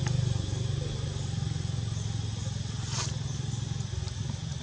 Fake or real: real